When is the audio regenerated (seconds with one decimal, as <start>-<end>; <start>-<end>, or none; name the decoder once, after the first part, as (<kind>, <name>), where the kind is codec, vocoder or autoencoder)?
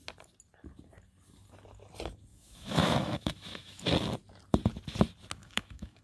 2.3-3.8 (autoencoder, DAC-VAE); 5.4-6.0